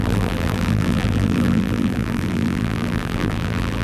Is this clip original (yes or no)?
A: no